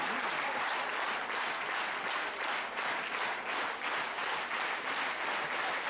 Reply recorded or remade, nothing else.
recorded